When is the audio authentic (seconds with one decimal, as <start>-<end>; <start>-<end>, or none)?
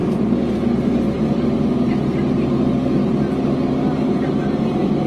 1.6-5.1